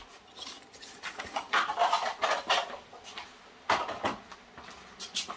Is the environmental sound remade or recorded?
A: recorded